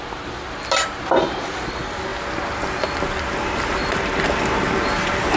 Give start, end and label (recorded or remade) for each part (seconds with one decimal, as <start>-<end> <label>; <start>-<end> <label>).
0.0-5.4 recorded